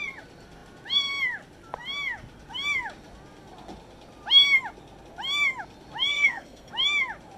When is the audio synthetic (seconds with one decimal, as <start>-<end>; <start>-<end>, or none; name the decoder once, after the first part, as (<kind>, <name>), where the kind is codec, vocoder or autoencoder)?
6.1-6.7 (codec, SNAC)